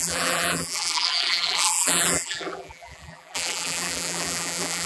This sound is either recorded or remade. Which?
remade